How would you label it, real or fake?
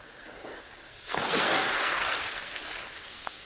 fake